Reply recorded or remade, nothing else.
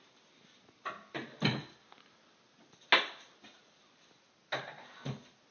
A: recorded